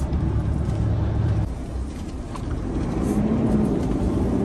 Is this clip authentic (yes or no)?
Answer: no